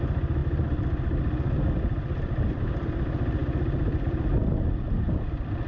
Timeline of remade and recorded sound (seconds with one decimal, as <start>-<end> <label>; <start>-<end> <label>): 0.0-5.7 recorded